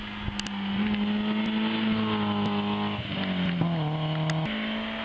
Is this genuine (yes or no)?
yes